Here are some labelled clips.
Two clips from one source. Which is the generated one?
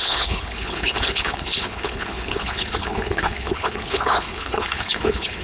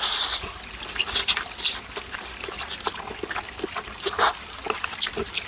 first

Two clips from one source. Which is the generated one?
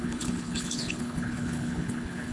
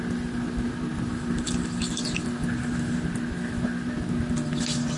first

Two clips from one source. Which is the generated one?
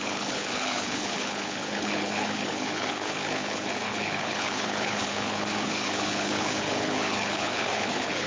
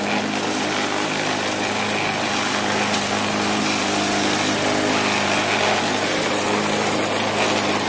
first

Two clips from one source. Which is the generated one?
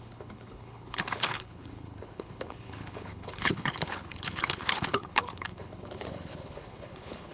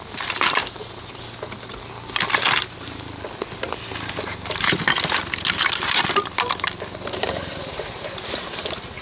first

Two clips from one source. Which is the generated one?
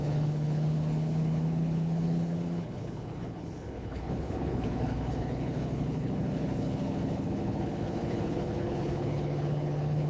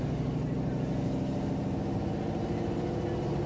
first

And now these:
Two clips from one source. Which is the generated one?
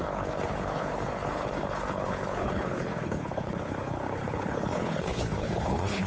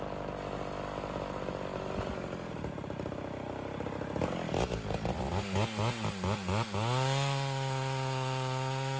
first